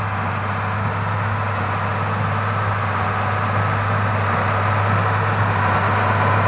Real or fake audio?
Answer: real